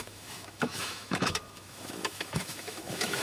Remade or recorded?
remade